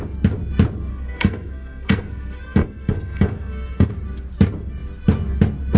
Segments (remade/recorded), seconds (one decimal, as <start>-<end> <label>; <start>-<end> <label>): 0.0-0.9 recorded; 0.9-3.9 remade; 3.9-5.8 recorded